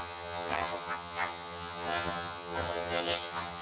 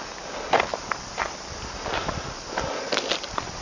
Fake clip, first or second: first